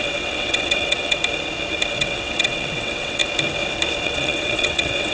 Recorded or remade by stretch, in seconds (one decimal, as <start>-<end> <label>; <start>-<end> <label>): 0.0-1.2 remade; 1.2-1.9 recorded; 1.9-3.2 remade; 3.2-4.0 recorded; 4.0-5.1 remade